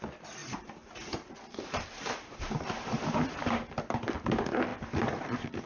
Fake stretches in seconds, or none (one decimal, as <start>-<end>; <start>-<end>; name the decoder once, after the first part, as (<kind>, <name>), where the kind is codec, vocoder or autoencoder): 0.4-3.8 (vocoder, BigVGAN v2); 4.7-5.7